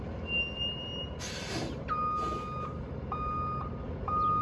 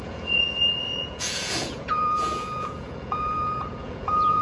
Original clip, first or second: first